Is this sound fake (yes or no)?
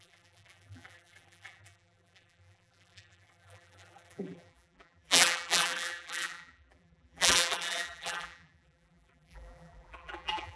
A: yes